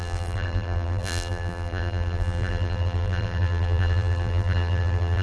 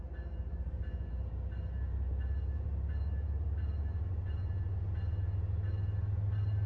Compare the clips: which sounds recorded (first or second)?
second